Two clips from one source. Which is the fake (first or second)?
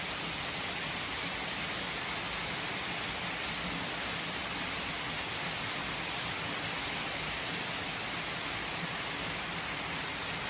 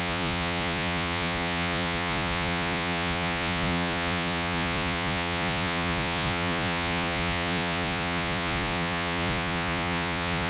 second